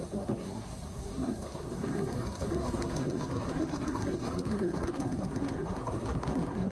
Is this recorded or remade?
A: remade